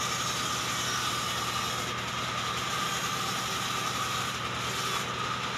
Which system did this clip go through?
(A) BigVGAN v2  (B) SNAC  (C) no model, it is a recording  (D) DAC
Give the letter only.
C